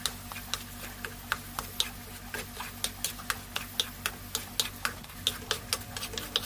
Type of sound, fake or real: real